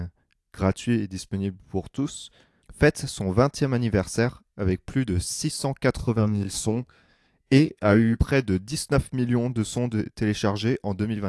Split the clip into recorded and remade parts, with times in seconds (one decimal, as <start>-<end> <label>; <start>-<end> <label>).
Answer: 0.0-6.0 recorded; 6.0-8.2 remade; 8.2-11.3 recorded